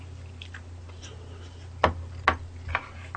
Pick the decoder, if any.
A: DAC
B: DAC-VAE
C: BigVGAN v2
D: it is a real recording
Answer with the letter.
D